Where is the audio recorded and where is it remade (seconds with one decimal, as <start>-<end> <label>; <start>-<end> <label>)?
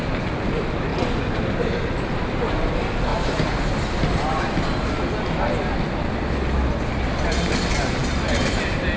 0.0-0.9 remade; 0.9-2.5 recorded; 2.5-3.1 remade; 3.1-6.9 recorded; 6.9-9.0 remade